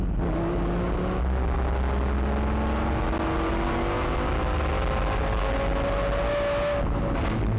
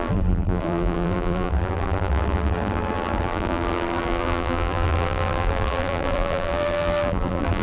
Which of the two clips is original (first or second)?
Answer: first